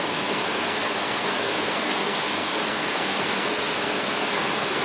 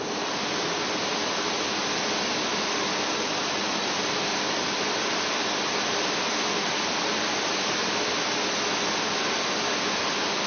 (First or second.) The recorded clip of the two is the second